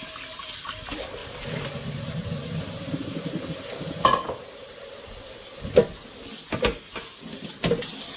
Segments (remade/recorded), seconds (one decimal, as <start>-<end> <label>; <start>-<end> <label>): 0.0-1.2 recorded; 1.2-5.7 remade; 5.7-8.2 recorded